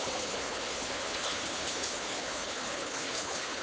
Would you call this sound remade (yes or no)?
yes